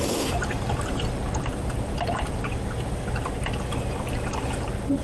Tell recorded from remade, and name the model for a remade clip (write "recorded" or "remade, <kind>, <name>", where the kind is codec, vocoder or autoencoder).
remade, vocoder, BigVGAN v2